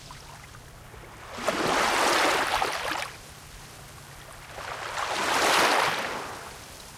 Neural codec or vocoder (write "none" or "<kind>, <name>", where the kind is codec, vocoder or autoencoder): none